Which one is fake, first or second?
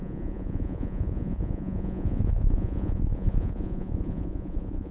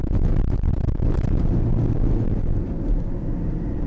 first